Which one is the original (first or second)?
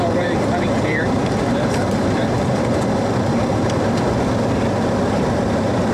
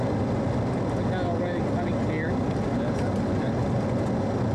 second